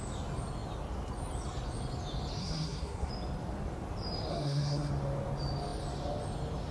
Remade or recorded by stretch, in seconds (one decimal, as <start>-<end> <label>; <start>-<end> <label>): 0.0-2.4 recorded; 2.4-3.1 remade; 3.1-4.3 recorded; 4.3-4.9 remade; 4.9-6.7 recorded

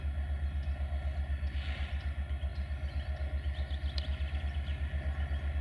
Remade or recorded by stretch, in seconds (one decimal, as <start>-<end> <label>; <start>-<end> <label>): 0.0-5.6 recorded

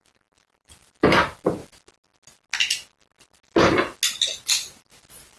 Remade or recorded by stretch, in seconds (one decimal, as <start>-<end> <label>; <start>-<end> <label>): 0.0-5.4 recorded

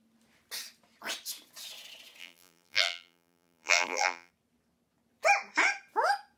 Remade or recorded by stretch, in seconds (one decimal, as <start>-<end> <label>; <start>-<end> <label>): 0.0-2.2 recorded; 2.2-4.3 remade; 4.3-6.4 recorded